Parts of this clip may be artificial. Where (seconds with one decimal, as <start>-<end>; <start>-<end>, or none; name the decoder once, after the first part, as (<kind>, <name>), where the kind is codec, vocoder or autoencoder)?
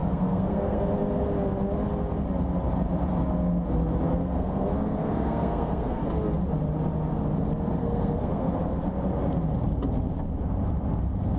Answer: 0.0-0.8 (codec, SNAC); 4.1-6.0; 7.8-8.5